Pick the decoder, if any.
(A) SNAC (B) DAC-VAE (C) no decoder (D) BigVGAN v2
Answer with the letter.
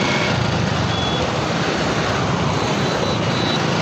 C